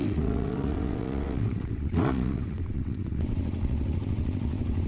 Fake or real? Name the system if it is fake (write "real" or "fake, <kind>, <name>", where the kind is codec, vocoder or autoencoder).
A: fake, vocoder, WaveNeXt